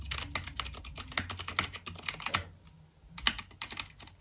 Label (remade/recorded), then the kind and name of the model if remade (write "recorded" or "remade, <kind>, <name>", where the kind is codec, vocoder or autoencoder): recorded